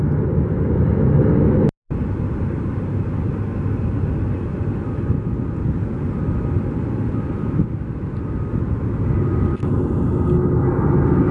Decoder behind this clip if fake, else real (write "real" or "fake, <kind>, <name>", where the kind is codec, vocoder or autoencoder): real